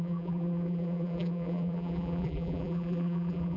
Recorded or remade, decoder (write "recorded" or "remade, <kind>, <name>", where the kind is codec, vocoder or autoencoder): remade, vocoder, BigVGAN v2